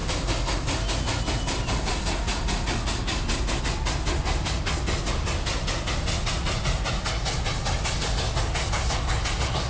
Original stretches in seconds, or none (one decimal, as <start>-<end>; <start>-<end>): 0.0-9.7